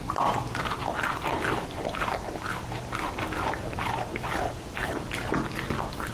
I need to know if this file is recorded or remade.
recorded